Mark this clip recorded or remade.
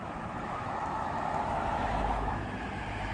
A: remade